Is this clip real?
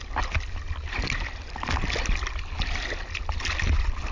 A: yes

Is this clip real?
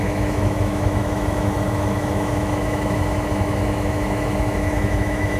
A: no